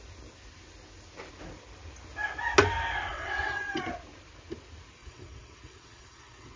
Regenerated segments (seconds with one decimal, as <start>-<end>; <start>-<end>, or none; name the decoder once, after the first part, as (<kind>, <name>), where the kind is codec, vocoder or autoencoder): 3.1-3.8 (vocoder, WaveNeXt); 5.0-6.6